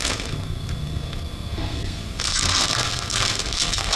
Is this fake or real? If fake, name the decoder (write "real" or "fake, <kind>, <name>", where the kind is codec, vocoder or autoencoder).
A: fake, codec, SNAC